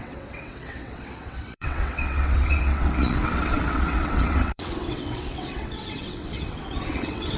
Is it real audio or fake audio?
fake